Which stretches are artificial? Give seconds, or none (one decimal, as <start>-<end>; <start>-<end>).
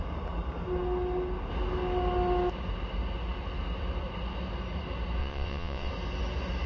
5.2-5.9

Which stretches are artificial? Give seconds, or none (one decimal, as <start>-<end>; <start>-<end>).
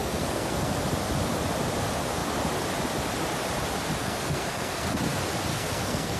0.0-0.8; 4.0-5.0; 5.5-6.2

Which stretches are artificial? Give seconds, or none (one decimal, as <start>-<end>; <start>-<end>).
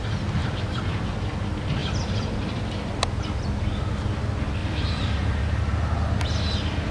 0.4-1.0; 1.8-3.2; 4.6-5.7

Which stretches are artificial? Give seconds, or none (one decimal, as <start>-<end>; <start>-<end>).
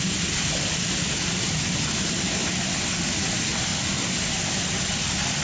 3.7-4.3